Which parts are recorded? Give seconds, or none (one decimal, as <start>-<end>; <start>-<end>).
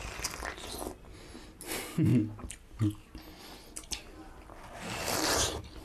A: 0.0-5.8